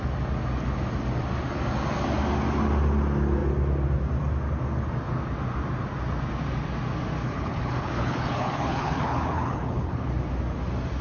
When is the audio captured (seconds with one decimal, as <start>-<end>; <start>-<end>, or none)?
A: 0.0-7.2; 10.1-11.0